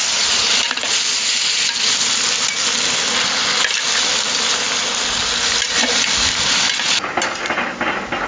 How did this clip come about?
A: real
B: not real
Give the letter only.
A